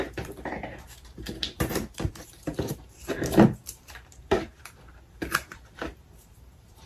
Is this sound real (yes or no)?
no